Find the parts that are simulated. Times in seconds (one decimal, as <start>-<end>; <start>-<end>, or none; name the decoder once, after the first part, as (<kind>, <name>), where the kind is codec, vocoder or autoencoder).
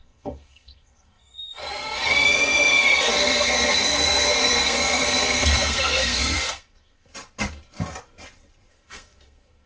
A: 0.0-7.1 (codec, SNAC); 8.7-9.7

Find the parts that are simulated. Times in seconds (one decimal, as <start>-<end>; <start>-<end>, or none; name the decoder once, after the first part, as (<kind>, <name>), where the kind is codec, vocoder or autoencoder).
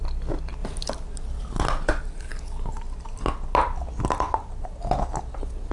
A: none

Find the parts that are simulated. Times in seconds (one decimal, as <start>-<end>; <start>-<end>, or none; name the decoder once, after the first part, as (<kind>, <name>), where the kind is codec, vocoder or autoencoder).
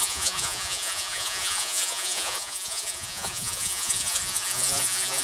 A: 0.0-5.2 (vocoder, Vocos)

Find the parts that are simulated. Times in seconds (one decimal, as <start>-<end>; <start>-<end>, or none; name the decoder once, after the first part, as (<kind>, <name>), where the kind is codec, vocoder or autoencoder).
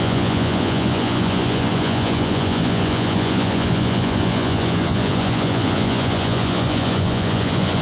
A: 0.0-7.8 (vocoder, Vocos)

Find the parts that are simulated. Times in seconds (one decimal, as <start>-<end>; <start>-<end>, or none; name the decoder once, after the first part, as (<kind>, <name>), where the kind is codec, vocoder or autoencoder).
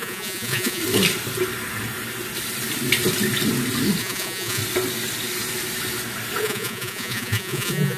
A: 0.0-0.8 (vocoder, Vocos); 4.0-4.6; 6.4-8.0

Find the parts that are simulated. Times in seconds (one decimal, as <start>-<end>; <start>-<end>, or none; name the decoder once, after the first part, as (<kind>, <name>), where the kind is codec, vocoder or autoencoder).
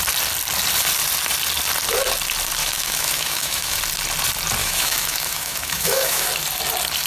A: 2.6-3.8 (autoencoder, DAC-VAE); 4.6-6.3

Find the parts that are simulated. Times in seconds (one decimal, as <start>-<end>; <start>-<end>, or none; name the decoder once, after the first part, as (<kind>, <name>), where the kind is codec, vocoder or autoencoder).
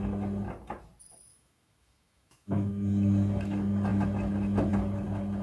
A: 1.3-2.7 (autoencoder, DAC-VAE)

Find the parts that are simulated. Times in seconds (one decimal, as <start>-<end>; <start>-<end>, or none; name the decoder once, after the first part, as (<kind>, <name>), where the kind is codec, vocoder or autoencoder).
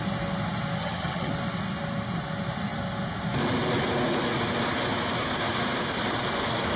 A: 0.8-1.3 (vocoder, HiFi-GAN)